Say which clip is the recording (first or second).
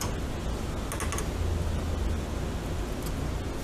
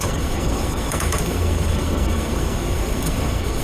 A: first